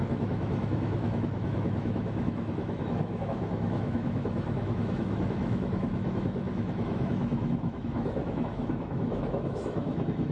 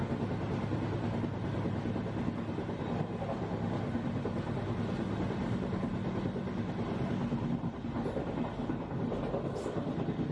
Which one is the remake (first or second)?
first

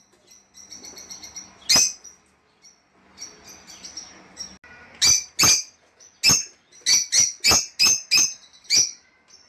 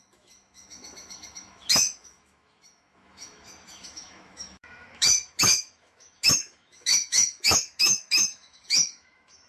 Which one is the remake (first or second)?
second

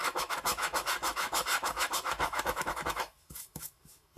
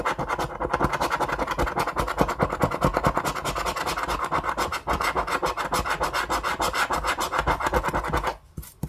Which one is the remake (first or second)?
first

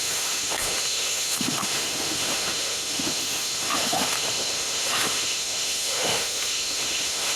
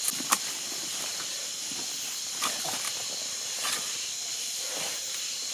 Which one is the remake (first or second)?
first